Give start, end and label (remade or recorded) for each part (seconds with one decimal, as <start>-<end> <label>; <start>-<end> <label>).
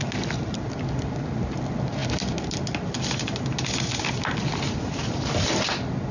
0.0-6.1 recorded